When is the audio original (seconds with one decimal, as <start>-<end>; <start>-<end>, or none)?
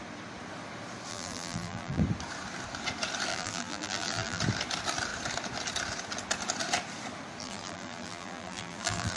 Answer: 0.0-1.1; 2.0-3.3; 4.4-7.4